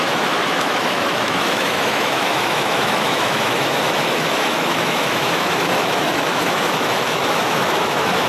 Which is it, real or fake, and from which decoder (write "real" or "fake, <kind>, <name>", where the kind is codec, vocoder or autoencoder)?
fake, autoencoder, DAC-VAE